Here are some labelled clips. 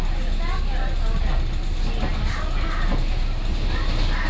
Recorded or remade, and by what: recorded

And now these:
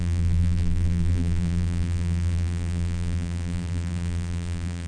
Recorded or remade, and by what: remade, vocoder, BigVGAN v2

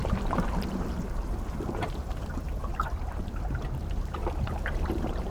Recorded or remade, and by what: remade, vocoder, BigVGAN v2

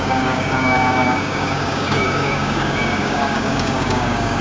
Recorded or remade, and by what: remade, codec, DAC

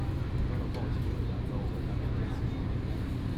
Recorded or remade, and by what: recorded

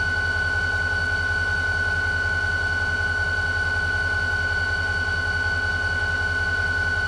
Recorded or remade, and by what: recorded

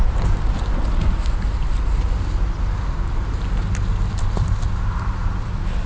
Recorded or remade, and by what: recorded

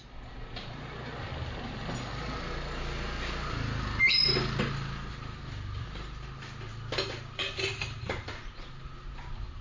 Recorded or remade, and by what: recorded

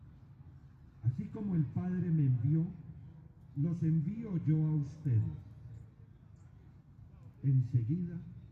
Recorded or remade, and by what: recorded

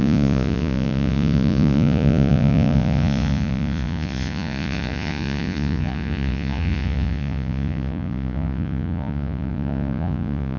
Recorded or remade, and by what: remade, vocoder, Vocos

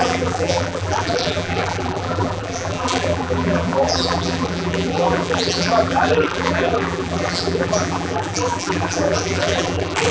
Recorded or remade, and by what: remade, vocoder, BigVGAN v2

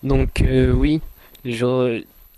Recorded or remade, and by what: remade, codec, HILCodec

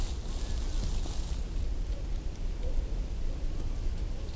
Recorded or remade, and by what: recorded